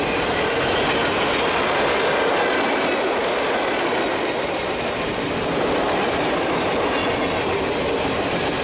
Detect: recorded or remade recorded